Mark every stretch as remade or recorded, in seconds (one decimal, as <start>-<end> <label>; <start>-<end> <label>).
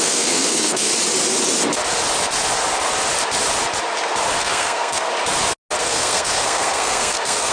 0.0-0.9 remade; 0.9-4.4 recorded; 4.4-5.1 remade; 5.1-5.8 recorded; 5.8-7.5 remade